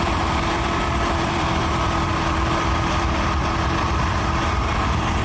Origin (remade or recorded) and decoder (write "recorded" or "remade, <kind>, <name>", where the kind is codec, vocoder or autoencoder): remade, vocoder, BigVGAN v2